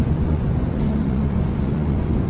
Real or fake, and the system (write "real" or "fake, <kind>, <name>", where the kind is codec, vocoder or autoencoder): fake, vocoder, Vocos